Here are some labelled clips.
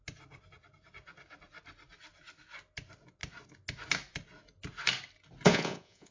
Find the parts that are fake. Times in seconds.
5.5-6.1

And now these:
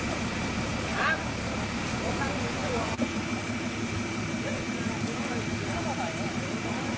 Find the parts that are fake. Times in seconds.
2.6-3.3

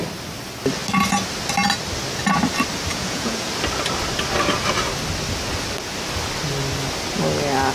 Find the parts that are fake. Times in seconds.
2.9-3.5

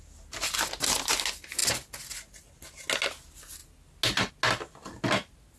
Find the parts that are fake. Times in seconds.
none